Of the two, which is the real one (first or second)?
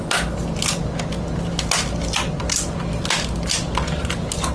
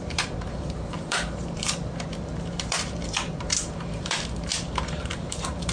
first